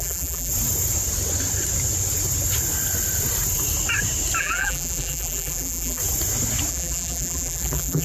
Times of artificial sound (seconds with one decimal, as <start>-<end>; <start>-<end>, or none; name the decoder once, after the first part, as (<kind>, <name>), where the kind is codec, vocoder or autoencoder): 0.0-0.5 (vocoder, BigVGAN v2); 4.4-6.0; 6.7-8.0